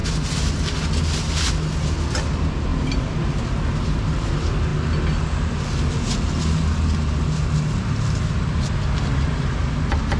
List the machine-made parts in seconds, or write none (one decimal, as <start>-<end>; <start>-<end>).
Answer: 2.7-3.4